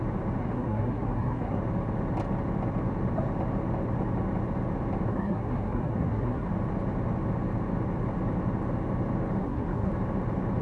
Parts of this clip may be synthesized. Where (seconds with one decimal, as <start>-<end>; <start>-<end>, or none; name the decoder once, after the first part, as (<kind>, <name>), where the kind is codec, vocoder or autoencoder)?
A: 0.4-1.6 (codec, SNAC); 5.1-6.5; 9.4-9.9